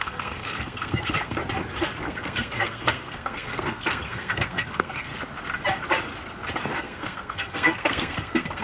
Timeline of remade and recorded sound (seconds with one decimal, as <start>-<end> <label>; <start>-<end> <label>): 0.0-1.4 remade; 1.4-2.0 recorded; 2.0-5.1 remade; 5.1-6.8 recorded; 6.8-8.6 remade